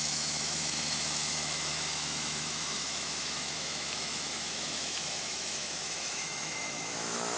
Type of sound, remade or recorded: remade